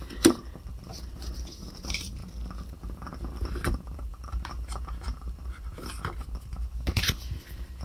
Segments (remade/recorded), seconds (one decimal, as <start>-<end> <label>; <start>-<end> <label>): 0.0-2.2 remade; 2.2-2.8 recorded; 2.8-7.8 remade